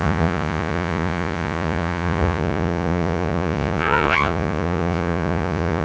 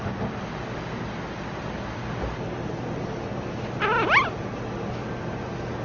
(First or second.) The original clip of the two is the second